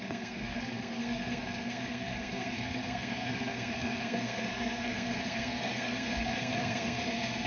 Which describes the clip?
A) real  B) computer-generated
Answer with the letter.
B